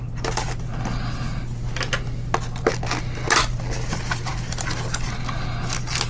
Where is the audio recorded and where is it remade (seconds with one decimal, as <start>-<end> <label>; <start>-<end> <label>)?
0.0-6.1 recorded